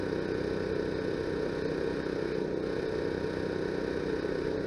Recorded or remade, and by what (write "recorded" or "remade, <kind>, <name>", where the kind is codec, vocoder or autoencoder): recorded